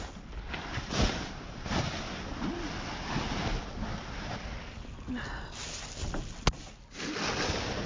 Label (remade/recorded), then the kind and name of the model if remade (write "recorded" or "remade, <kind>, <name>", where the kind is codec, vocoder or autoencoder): recorded